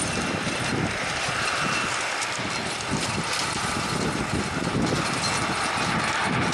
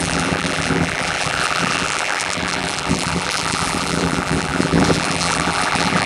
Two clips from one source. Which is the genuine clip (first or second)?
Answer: first